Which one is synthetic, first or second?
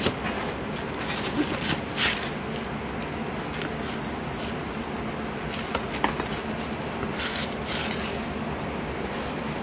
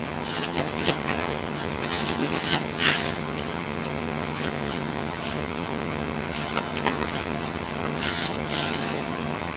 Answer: second